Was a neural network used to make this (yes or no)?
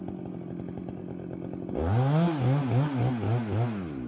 no